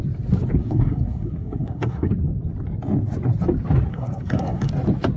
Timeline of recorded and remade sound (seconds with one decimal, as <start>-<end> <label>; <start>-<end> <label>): 0.0-0.6 recorded; 0.6-2.1 remade; 2.1-3.9 recorded; 3.9-4.7 remade; 4.7-5.2 recorded